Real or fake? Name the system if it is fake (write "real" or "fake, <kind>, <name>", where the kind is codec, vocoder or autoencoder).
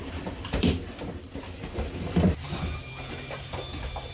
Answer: fake, vocoder, BigVGAN v2